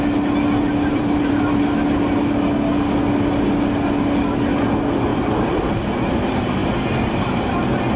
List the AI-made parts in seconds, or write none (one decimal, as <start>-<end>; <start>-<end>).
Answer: 0.9-1.6; 5.1-5.7